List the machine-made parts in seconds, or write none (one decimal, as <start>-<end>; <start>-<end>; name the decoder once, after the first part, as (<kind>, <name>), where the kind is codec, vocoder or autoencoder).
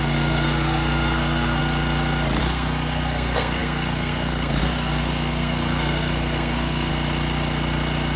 0.0-1.6 (codec, SNAC); 2.4-6.9